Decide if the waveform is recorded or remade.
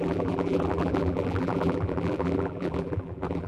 remade